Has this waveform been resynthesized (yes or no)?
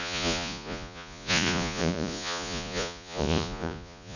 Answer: yes